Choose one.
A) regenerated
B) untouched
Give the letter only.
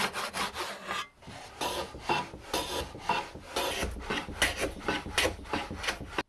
B